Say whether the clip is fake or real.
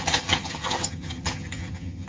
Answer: fake